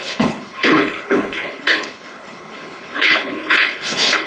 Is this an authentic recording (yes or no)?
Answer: no